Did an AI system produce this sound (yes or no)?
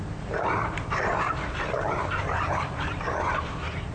yes